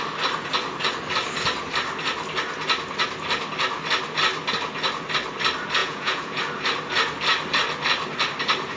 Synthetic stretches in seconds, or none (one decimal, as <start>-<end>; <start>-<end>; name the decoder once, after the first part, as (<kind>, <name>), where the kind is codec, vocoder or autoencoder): 5.8-6.4 (vocoder, Vocos)